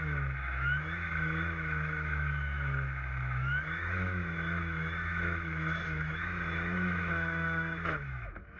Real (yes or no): no